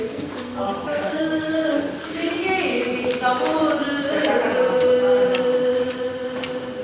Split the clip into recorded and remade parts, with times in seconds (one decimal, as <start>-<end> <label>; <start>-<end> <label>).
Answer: 0.0-2.3 remade; 2.3-6.8 recorded